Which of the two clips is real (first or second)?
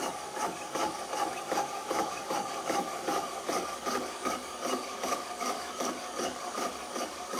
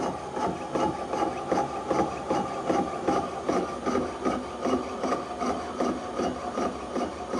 second